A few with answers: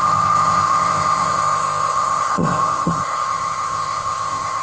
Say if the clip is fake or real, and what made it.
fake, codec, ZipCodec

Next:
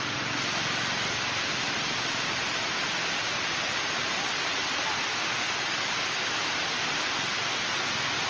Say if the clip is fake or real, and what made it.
real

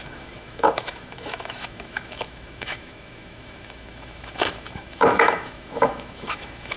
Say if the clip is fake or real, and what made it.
fake, autoencoder, DAC-VAE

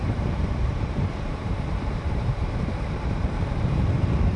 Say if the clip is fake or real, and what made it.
fake, vocoder, BigVGAN v2